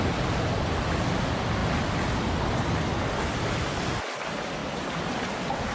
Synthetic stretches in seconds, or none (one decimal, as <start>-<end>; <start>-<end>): none